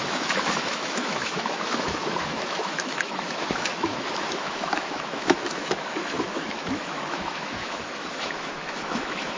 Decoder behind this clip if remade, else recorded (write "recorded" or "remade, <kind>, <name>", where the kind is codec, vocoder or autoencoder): remade, autoencoder, DAC-VAE